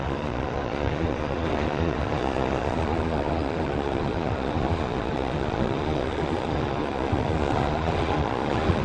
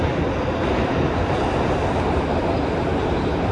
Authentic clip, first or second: second